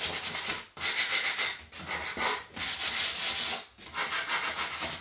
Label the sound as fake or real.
real